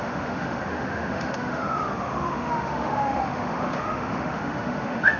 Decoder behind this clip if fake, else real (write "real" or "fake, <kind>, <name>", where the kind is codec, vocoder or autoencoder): fake, autoencoder, DAC-VAE